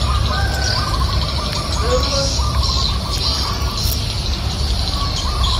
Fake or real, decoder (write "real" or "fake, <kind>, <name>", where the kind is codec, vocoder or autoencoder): real